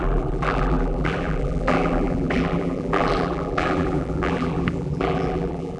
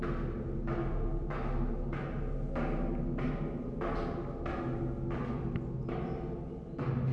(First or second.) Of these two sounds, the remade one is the first